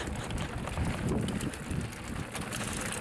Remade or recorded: recorded